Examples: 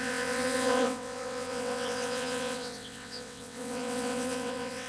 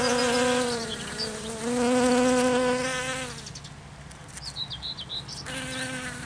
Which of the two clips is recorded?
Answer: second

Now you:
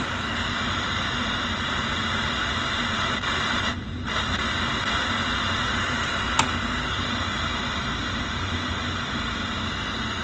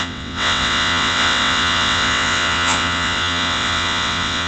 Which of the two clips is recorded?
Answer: first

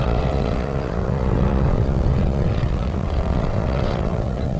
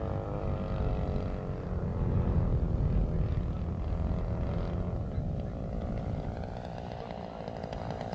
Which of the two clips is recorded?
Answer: second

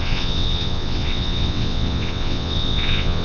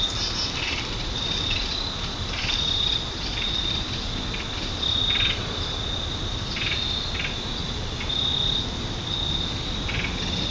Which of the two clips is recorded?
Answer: second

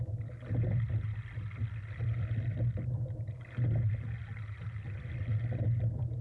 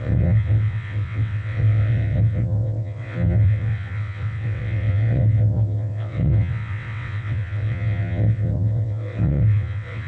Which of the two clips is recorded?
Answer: first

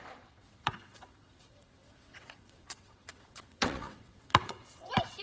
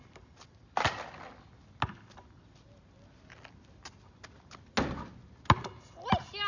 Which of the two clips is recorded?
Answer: second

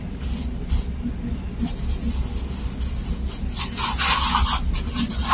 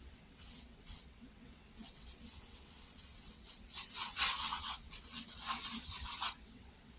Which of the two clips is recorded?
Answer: first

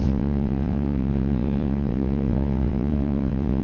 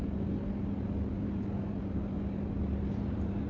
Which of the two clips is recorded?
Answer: second